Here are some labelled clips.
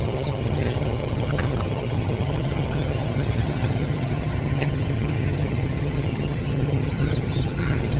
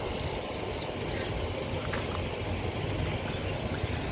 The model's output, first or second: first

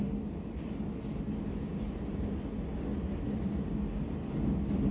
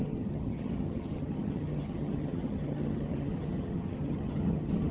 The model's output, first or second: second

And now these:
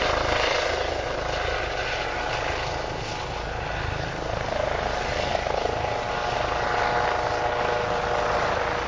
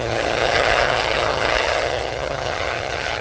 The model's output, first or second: second